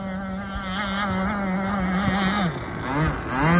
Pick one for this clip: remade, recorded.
recorded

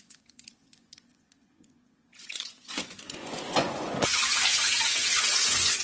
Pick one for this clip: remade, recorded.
remade